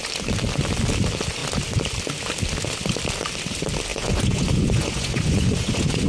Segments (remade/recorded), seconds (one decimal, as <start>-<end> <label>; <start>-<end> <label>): 0.0-3.9 recorded; 3.9-6.1 remade

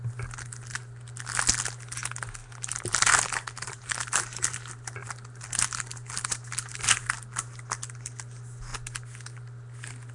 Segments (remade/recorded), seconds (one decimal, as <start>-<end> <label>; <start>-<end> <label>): 0.0-10.1 recorded

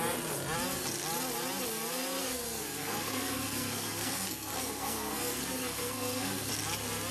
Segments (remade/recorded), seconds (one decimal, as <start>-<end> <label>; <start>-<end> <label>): 0.0-2.2 recorded; 2.2-6.5 remade; 6.5-7.1 recorded

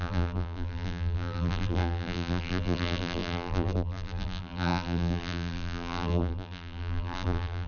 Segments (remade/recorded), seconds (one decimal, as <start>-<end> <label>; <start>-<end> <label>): 0.0-7.7 remade

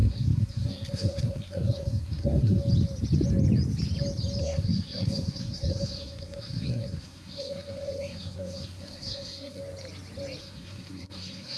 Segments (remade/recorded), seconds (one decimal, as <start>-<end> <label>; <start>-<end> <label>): 0.0-2.6 remade; 2.6-4.4 recorded; 4.4-9.6 remade; 9.6-10.4 recorded; 10.4-11.6 remade

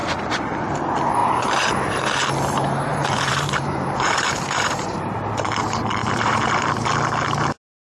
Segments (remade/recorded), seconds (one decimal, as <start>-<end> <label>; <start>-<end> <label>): 0.0-0.6 remade; 0.6-1.2 recorded; 1.2-2.3 remade; 2.3-2.9 recorded; 2.9-5.6 remade; 5.6-6.0 recorded; 6.0-6.6 remade; 6.6-7.8 recorded